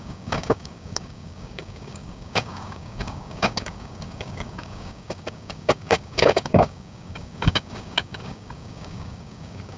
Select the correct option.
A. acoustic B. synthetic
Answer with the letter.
B